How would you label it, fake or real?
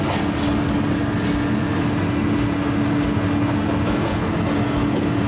real